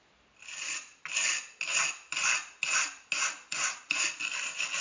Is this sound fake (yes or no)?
no